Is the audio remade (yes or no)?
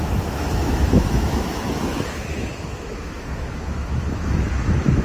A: yes